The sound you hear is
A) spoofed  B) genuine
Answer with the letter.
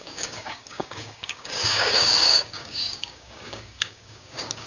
A